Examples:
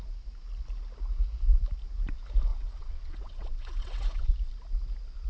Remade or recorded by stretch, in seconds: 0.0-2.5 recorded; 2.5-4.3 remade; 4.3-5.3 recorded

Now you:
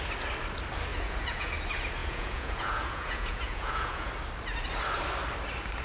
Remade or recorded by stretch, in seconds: 0.0-0.9 recorded; 0.9-1.5 remade; 1.5-2.0 recorded; 2.0-4.1 remade; 4.1-5.8 recorded

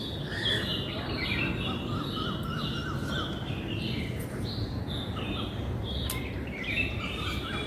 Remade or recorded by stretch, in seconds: 0.0-7.7 recorded

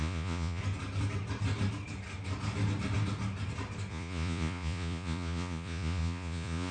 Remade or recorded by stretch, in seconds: 0.0-0.6 remade; 0.6-3.9 recorded; 3.9-6.7 remade

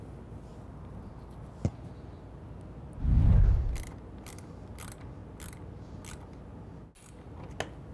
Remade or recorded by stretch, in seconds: 0.0-7.9 recorded